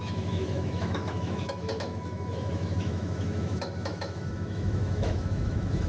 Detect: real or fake fake